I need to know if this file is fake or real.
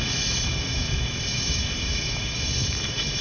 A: fake